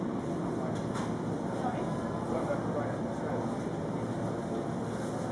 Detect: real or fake real